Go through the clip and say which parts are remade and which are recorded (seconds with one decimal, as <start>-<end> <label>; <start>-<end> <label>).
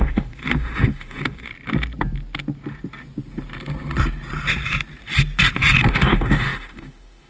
0.0-1.5 remade; 1.5-5.9 recorded; 5.9-7.3 remade